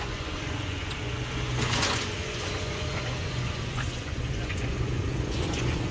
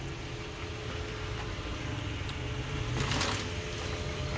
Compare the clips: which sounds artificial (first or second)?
first